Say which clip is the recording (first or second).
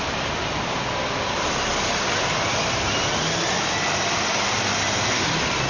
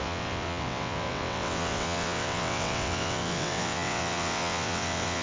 first